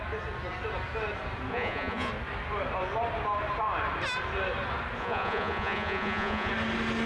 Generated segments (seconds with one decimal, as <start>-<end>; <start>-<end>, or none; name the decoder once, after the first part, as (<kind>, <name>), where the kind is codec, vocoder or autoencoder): 1.5-2.1 (vocoder, Vocos); 5.0-6.5